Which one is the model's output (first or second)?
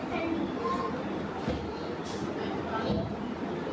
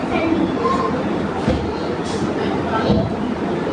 second